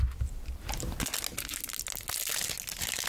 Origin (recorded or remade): recorded